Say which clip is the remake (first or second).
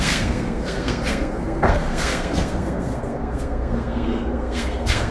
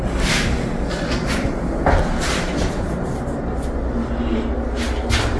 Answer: first